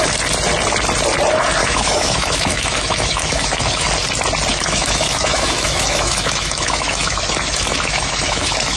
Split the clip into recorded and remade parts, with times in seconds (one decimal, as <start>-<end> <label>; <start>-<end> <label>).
0.0-1.6 recorded; 1.6-3.9 remade; 3.9-4.5 recorded; 4.5-8.8 remade